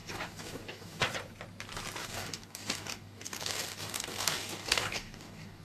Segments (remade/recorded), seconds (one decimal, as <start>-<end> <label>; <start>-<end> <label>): 0.0-1.0 remade; 1.0-2.0 recorded; 2.0-5.6 remade